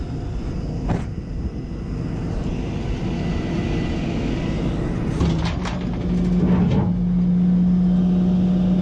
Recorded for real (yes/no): yes